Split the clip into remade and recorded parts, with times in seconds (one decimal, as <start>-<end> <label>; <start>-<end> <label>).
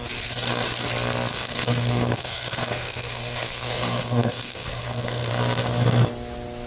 0.0-1.3 recorded; 1.3-5.3 remade; 5.3-6.7 recorded